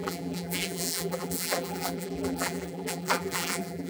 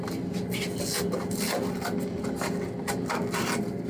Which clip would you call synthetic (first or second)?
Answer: first